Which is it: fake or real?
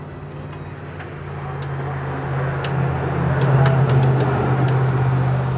real